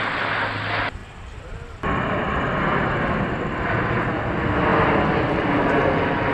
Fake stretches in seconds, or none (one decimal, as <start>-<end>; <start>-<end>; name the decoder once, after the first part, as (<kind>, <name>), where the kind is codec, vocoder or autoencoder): 1.0-3.9 (vocoder, BigVGAN v2)